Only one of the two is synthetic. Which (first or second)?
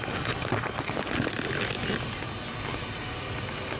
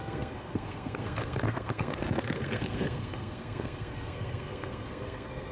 second